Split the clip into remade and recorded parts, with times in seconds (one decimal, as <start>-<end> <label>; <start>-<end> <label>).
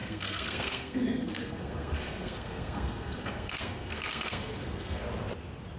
0.0-5.0 remade; 5.0-5.8 recorded